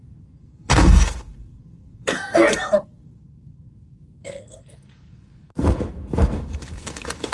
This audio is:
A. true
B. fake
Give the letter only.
B